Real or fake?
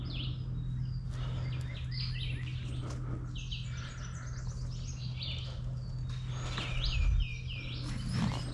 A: real